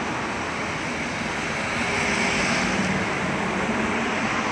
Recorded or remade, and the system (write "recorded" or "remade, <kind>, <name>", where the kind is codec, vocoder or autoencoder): recorded